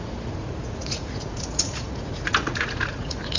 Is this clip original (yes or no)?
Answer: no